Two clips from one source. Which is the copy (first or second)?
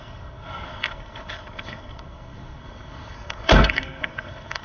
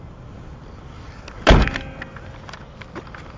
first